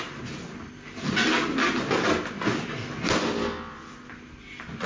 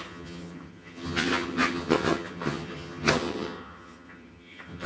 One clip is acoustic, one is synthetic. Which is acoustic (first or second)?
first